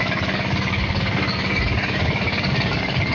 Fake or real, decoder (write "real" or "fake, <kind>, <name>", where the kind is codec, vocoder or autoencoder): fake, codec, DAC